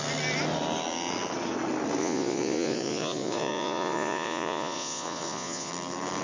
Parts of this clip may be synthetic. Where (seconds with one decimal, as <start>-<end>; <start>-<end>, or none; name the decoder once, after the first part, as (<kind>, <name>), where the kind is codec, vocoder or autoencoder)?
2.0-5.7 (vocoder, Vocos)